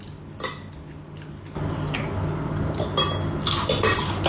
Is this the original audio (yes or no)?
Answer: yes